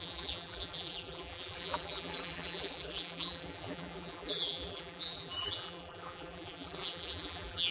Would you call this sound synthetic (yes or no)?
yes